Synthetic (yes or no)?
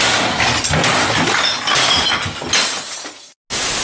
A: no